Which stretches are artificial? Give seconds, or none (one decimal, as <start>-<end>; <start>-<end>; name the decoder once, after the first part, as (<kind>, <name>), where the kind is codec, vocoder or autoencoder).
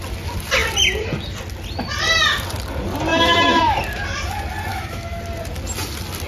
3.1-3.6 (autoencoder, DAC-VAE); 4.7-5.2